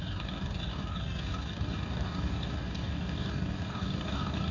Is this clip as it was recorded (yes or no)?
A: no